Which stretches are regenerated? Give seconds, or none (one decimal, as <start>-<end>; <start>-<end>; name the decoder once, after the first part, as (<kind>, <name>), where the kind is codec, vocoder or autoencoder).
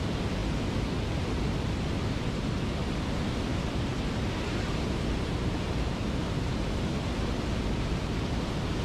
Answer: 3.5-6.7 (vocoder, BigVGAN v2)